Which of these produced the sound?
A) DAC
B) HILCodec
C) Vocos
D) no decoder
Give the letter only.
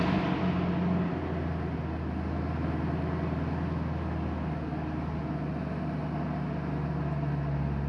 D